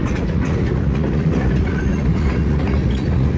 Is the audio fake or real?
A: fake